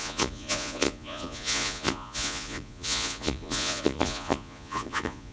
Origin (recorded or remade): remade